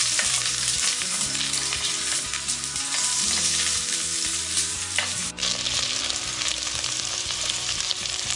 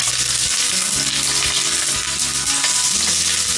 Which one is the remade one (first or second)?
first